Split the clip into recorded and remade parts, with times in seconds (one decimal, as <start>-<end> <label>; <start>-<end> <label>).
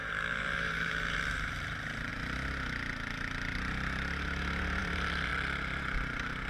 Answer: 0.0-0.8 recorded; 0.8-2.1 remade; 2.1-4.8 recorded; 4.8-5.3 remade; 5.3-6.5 recorded